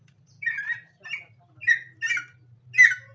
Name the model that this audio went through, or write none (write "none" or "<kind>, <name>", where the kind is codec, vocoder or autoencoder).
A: none